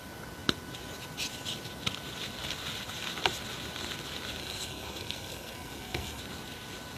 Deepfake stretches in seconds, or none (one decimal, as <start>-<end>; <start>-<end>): 4.4-6.2

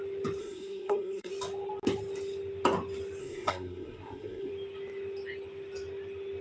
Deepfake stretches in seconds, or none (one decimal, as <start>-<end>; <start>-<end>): 0.4-1.3; 3.2-4.5

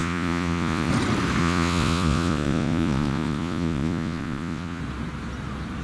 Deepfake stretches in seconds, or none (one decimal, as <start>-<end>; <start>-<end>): 0.0-0.9; 1.4-4.8

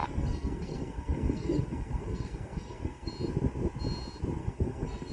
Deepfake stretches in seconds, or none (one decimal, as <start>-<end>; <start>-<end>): 0.0-3.1; 4.4-5.1

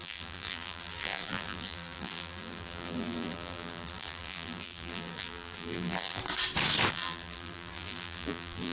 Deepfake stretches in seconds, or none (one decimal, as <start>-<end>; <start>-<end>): 0.0-6.2; 6.9-8.7

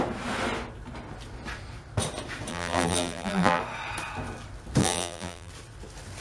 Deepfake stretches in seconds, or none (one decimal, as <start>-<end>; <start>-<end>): 2.5-3.6; 4.8-5.5

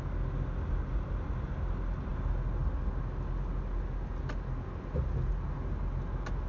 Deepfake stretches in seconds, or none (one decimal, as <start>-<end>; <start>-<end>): none

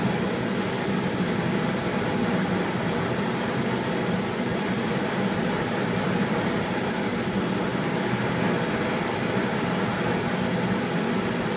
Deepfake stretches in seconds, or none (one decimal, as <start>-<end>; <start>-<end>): 4.5-5.1; 7.7-8.4